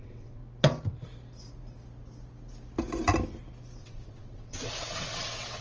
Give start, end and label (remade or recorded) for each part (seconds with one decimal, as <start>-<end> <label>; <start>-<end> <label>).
0.0-0.4 remade; 0.4-3.8 recorded; 3.8-5.6 remade